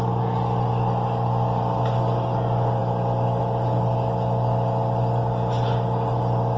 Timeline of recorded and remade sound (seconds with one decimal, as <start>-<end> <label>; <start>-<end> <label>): 0.0-6.6 recorded